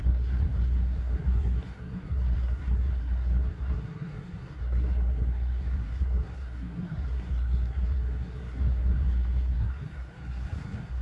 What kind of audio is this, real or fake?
fake